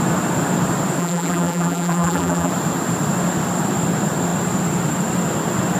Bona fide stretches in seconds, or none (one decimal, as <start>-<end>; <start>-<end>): 0.0-1.0; 2.5-5.8